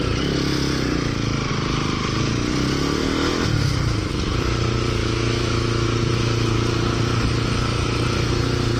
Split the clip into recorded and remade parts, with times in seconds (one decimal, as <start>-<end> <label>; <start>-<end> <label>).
0.0-5.0 recorded; 5.0-6.1 remade; 6.1-8.8 recorded